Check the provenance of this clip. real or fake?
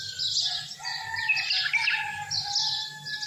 real